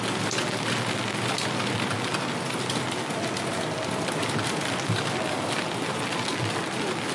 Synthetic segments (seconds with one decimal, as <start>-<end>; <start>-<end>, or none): none